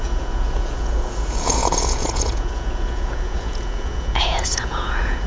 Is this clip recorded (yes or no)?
no